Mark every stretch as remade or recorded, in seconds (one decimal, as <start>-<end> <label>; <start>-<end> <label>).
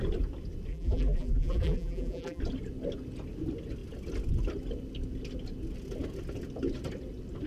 0.0-0.7 recorded; 0.7-2.4 remade; 2.4-7.5 recorded